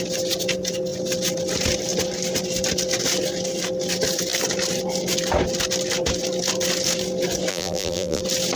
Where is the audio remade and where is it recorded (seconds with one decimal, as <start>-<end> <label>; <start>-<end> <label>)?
0.0-7.5 recorded; 7.5-8.2 remade; 8.2-8.6 recorded